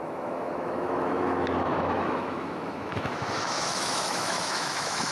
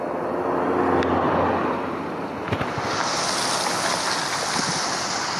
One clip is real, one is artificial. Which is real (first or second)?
second